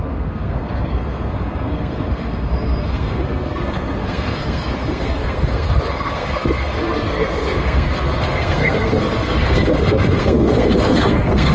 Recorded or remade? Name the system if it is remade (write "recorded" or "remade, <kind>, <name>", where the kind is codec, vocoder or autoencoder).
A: remade, codec, SNAC